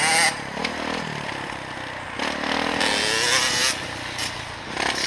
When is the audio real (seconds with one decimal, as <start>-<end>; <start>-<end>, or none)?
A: 0.0-5.1